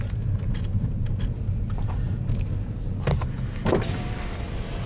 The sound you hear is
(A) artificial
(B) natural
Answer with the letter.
B